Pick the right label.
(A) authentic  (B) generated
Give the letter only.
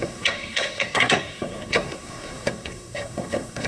B